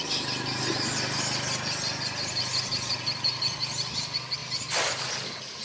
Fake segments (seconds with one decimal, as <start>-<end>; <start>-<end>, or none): none

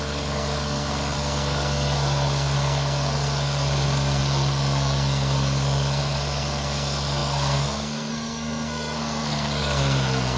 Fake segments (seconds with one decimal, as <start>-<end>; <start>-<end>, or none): 0.0-10.4

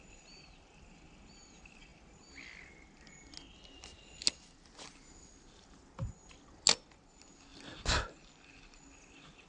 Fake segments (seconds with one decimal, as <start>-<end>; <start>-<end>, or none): none

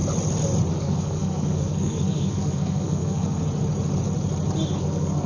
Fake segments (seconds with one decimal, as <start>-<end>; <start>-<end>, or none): 0.7-3.4; 4.8-5.3

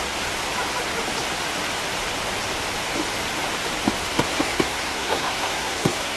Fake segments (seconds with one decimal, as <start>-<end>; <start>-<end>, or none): 4.1-6.2